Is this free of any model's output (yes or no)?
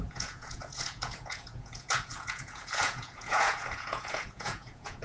no